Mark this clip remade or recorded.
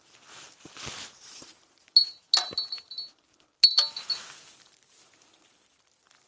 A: recorded